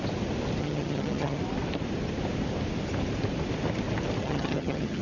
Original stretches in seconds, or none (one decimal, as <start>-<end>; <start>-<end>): 0.0-0.6; 1.4-4.2